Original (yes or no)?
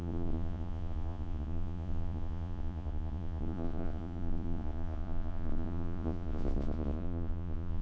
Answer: no